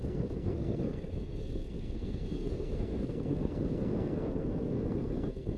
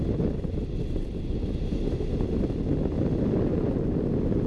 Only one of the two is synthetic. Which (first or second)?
first